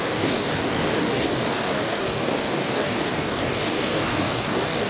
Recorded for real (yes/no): no